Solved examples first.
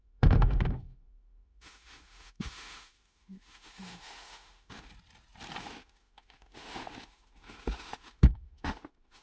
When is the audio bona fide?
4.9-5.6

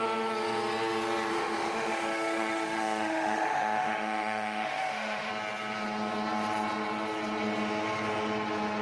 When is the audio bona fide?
0.0-1.3; 5.3-8.8

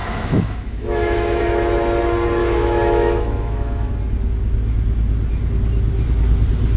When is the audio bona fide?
1.4-2.4; 3.9-6.8

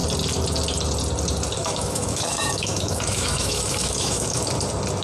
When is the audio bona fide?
0.0-1.6; 4.5-5.0

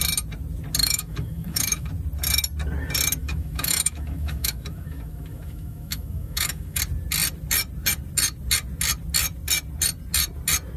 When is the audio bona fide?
0.0-0.8; 1.9-3.2; 6.8-10.8